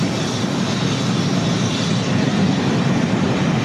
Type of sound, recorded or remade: recorded